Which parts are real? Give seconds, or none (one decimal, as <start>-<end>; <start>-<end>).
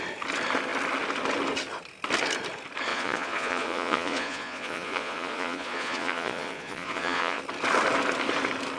0.0-2.9; 7.4-8.8